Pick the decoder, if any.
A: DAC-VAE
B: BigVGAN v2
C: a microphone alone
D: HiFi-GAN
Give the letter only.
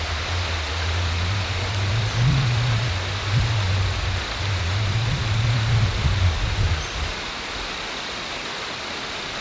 C